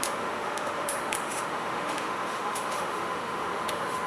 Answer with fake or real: fake